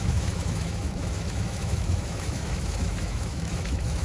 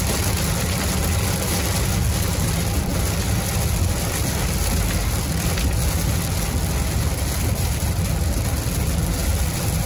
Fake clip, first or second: first